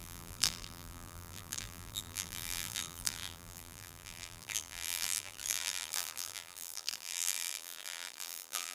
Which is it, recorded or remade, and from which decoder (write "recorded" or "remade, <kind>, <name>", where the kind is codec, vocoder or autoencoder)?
remade, vocoder, BigVGAN v2